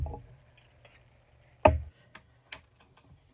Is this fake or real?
real